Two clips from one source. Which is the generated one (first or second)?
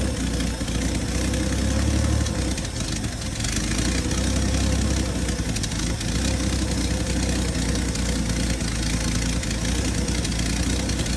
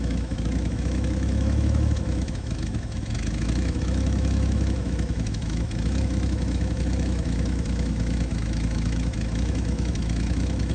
second